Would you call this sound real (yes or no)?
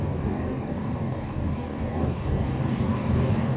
no